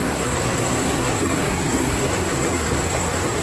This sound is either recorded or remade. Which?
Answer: remade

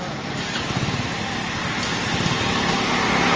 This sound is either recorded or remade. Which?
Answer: recorded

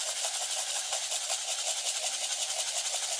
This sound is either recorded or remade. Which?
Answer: recorded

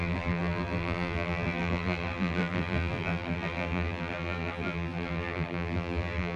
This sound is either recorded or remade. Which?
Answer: remade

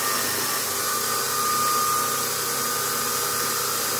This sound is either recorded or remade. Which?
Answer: recorded